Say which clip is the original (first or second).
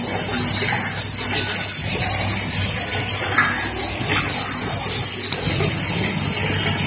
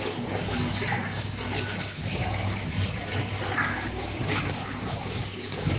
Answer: first